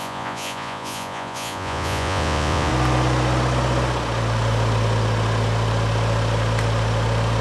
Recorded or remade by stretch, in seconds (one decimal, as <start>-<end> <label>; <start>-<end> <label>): 0.0-2.7 remade; 2.7-7.4 recorded